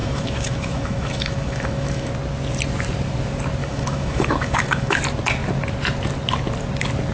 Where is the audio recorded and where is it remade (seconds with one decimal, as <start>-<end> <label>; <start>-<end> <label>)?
0.0-2.1 remade; 2.1-3.6 recorded; 3.6-5.0 remade; 5.0-7.1 recorded

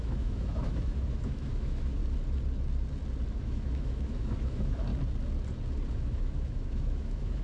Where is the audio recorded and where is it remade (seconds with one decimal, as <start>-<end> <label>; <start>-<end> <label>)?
0.0-2.0 remade; 2.0-3.3 recorded; 3.3-4.9 remade; 4.9-5.9 recorded; 5.9-7.4 remade

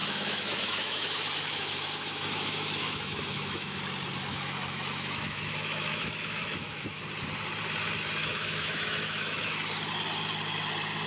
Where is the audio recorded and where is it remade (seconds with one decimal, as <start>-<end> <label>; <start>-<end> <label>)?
0.0-3.8 remade; 3.8-4.3 recorded; 4.3-7.0 remade; 7.0-8.2 recorded; 8.2-9.5 remade; 9.5-11.1 recorded

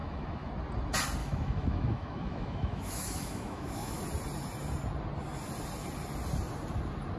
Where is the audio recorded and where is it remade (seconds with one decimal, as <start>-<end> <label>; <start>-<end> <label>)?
0.0-0.5 remade; 0.5-1.2 recorded; 1.2-4.0 remade; 4.0-7.2 recorded

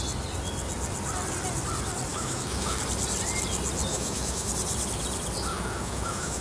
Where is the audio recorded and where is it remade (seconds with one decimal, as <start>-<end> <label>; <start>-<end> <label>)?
0.0-2.1 recorded; 2.1-2.8 remade; 2.8-3.9 recorded; 3.9-4.5 remade; 4.5-5.5 recorded; 5.5-6.4 remade